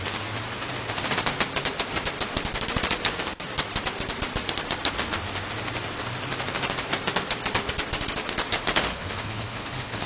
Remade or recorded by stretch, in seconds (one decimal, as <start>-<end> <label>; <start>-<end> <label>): 0.0-8.9 recorded; 8.9-10.1 remade